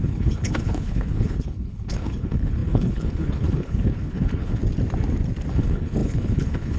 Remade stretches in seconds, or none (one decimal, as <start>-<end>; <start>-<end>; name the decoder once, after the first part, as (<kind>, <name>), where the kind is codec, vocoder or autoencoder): 0.0-4.6 (codec, HILCodec); 5.5-6.8